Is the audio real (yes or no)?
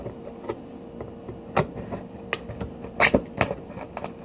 yes